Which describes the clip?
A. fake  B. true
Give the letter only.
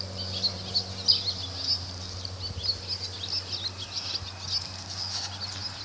B